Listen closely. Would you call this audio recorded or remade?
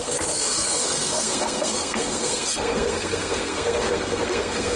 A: remade